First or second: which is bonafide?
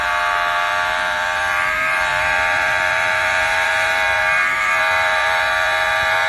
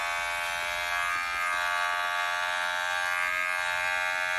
second